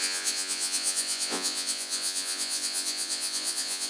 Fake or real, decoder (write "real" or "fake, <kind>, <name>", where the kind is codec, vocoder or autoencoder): fake, vocoder, Vocos